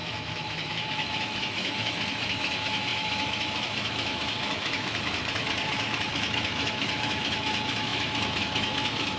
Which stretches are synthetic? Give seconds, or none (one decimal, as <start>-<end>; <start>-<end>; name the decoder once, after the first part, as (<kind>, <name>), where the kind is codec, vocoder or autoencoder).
0.0-9.2 (autoencoder, DAC-VAE)